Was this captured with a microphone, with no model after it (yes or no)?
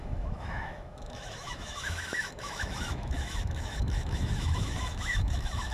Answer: no